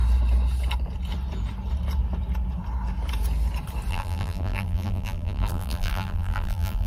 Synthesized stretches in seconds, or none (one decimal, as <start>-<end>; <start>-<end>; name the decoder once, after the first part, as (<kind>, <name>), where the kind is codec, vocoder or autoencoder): 3.9-6.9 (vocoder, BigVGAN v2)